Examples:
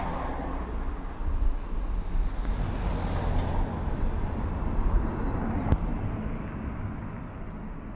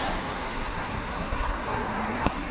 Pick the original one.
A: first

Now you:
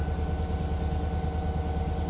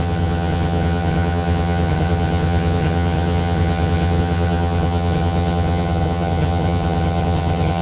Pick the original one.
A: first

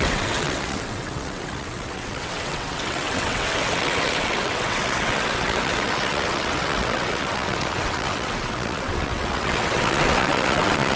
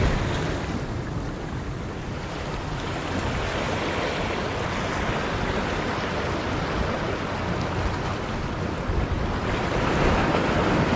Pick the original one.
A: second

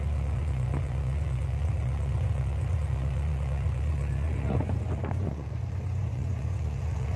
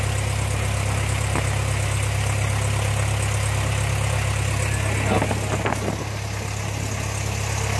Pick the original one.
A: second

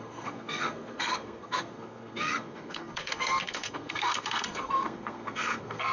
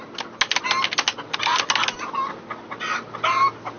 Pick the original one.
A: second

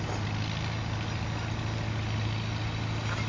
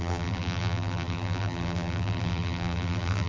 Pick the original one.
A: first